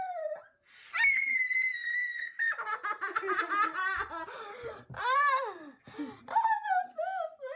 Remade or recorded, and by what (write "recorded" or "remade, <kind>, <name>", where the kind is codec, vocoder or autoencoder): recorded